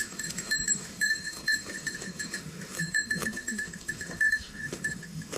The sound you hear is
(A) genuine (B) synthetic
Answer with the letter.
B